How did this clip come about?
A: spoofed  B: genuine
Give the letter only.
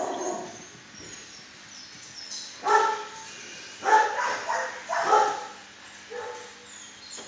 B